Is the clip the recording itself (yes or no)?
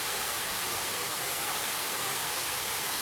no